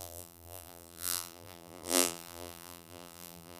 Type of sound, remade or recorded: remade